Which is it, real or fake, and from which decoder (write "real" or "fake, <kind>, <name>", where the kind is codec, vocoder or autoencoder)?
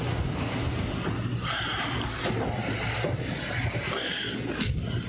real